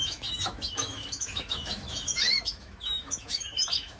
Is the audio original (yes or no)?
no